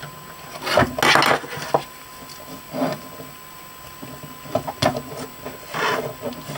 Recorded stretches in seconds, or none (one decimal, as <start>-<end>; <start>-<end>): 0.0-6.6